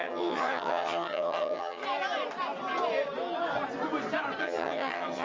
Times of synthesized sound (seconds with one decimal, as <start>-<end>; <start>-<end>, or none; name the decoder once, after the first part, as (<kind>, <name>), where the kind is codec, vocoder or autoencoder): 0.0-1.8 (vocoder, HiFi-GAN); 4.4-5.2